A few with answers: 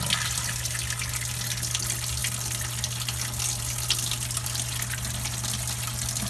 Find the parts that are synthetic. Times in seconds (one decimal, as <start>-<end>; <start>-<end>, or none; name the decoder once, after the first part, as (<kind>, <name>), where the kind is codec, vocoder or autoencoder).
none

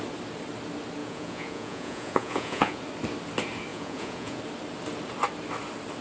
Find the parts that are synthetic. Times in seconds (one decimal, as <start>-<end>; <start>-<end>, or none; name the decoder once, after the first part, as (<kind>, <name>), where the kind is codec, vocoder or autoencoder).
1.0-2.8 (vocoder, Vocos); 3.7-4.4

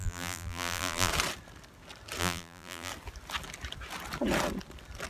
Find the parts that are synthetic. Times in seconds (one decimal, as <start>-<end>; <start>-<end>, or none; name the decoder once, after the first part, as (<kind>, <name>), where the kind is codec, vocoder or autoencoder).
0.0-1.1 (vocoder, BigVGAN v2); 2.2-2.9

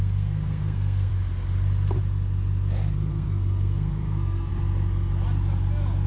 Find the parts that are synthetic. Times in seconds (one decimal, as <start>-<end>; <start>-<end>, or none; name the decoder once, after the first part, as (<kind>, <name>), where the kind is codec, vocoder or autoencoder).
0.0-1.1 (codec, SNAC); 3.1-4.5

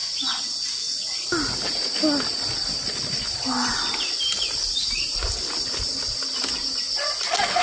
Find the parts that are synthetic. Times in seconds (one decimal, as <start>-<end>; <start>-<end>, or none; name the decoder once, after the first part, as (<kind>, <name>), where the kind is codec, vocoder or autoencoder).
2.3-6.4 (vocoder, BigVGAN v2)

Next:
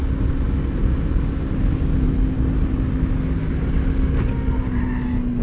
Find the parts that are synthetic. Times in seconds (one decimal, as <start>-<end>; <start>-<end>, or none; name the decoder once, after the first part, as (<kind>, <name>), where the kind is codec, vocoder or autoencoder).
none